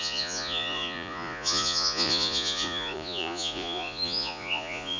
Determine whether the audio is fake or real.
fake